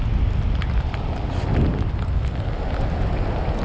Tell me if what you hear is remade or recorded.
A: recorded